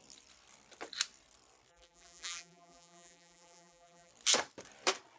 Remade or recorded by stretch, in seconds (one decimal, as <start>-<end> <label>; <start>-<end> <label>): 0.0-1.7 recorded; 1.7-4.1 remade; 4.1-5.2 recorded